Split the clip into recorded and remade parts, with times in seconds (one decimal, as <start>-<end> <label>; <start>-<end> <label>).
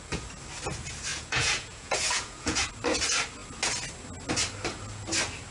0.0-1.1 recorded; 1.1-2.7 remade; 2.7-5.5 recorded